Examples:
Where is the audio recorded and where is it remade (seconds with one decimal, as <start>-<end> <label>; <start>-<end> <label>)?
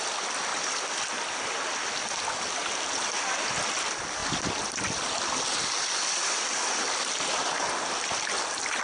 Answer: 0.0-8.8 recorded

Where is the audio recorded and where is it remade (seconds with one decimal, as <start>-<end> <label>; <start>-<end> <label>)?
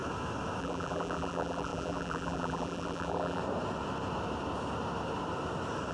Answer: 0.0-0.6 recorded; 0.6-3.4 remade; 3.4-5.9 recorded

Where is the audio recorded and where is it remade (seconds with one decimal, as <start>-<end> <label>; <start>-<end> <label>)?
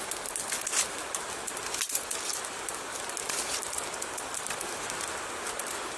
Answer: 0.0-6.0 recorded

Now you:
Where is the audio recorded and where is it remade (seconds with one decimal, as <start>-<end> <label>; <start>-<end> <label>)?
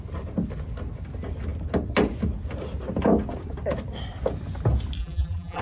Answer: 0.0-5.0 recorded; 5.0-5.6 remade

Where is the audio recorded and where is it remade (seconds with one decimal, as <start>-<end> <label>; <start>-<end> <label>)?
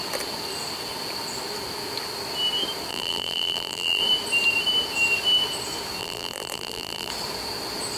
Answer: 0.0-2.9 recorded; 2.9-4.0 remade; 4.0-6.0 recorded; 6.0-7.1 remade; 7.1-8.0 recorded